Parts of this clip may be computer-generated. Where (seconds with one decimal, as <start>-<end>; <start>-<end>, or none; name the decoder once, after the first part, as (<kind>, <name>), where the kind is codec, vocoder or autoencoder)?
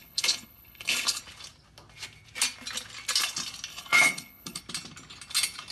0.0-1.2 (codec, HILCodec); 3.7-4.6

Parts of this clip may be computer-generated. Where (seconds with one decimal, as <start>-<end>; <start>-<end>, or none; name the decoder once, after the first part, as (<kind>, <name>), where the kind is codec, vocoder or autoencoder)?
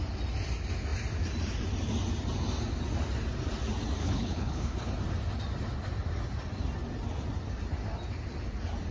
4.0-4.9 (codec, HILCodec)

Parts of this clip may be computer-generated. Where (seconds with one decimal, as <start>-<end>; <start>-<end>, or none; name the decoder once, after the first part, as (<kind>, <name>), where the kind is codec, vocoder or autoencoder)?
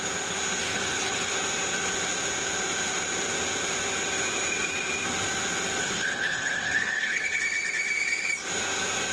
0.6-1.3 (codec, HILCodec); 5.8-7.4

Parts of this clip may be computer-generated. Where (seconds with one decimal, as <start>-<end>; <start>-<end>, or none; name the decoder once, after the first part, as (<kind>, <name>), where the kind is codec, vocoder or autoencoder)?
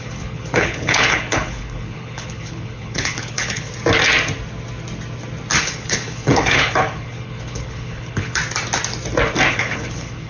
0.0-3.7 (codec, HILCodec); 5.6-8.4; 9.5-10.3